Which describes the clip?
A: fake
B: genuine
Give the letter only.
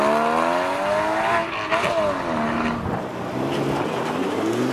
B